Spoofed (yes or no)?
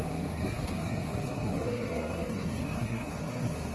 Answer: yes